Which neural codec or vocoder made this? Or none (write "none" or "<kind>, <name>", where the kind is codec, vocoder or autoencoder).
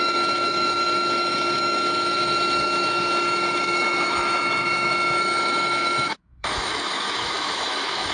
autoencoder, DAC-VAE